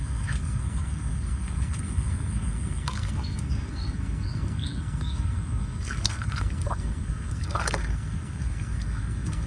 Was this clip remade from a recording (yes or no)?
yes